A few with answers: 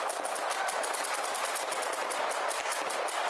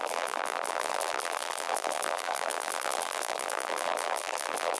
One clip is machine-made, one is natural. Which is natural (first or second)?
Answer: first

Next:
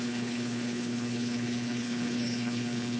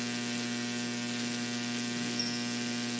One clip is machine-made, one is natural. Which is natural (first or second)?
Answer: second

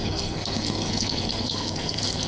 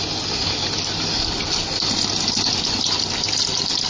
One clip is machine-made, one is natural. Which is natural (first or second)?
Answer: second